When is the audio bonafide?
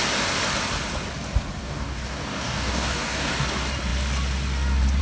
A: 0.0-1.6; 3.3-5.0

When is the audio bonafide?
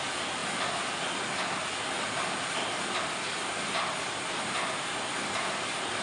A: 0.0-6.0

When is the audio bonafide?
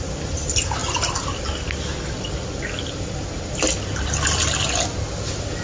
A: 0.0-5.6